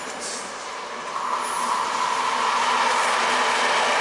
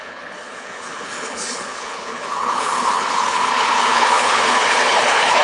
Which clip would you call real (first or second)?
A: first